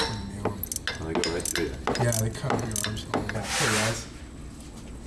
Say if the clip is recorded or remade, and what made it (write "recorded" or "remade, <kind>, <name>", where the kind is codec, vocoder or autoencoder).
recorded